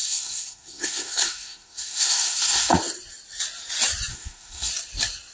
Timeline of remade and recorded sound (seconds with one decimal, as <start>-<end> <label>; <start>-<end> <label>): 0.0-2.7 remade; 2.7-4.1 recorded; 4.1-4.7 remade; 4.7-5.3 recorded